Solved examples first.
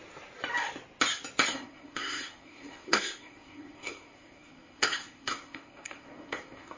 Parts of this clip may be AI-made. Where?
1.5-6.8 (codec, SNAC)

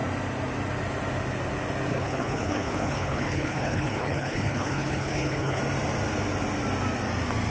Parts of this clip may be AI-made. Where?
1.9-5.6 (codec, HILCodec)

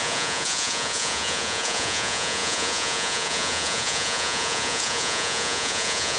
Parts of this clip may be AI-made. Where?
0.0-6.2 (vocoder, Vocos)

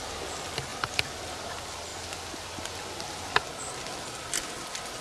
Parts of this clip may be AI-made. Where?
none

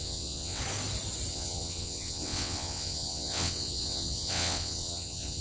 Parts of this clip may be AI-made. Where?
0.0-0.6 (vocoder, WaveNeXt); 1.3-5.4

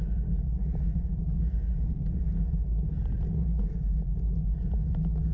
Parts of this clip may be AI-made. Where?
none